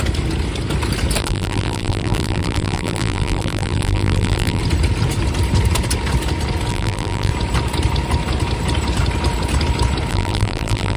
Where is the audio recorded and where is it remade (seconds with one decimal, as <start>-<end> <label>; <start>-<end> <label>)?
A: 0.0-1.2 recorded; 1.2-4.6 remade; 4.6-6.7 recorded; 6.7-7.3 remade; 7.3-10.1 recorded; 10.1-11.0 remade